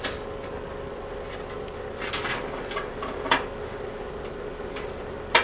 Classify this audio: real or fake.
real